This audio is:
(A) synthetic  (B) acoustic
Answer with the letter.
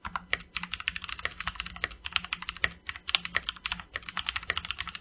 B